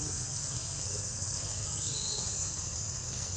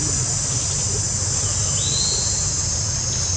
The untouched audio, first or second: second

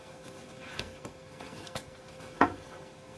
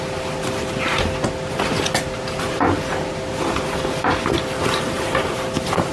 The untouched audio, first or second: second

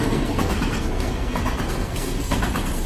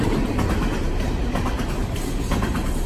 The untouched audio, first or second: second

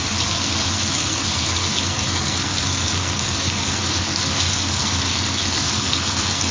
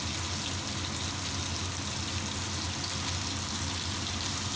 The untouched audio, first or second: second